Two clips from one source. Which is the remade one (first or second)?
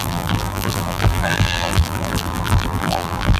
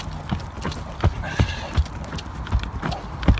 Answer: first